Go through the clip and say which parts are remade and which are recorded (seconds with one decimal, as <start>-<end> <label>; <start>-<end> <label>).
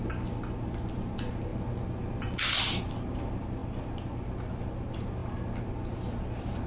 0.0-6.7 recorded